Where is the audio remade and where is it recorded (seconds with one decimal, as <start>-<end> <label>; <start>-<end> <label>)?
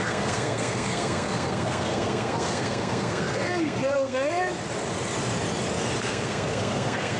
0.0-4.5 remade; 4.5-6.0 recorded; 6.0-7.2 remade